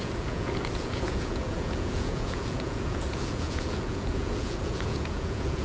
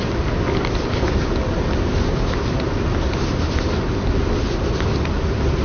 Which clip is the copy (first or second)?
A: first